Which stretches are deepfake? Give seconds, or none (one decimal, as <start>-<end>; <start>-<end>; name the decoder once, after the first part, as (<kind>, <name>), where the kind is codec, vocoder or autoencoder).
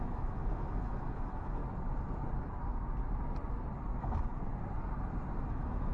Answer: 0.0-1.6 (autoencoder, DAC-VAE); 4.0-4.4; 5.5-5.9